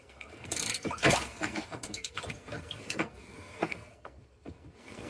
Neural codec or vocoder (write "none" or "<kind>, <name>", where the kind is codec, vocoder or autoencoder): codec, SNAC